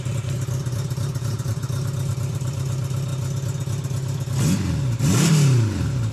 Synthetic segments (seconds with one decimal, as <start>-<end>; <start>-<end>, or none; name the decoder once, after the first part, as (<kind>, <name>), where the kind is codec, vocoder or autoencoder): 0.0-1.6 (vocoder, BigVGAN v2); 2.1-3.1